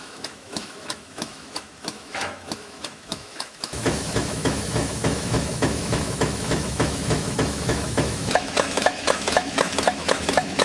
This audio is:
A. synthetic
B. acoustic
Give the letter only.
A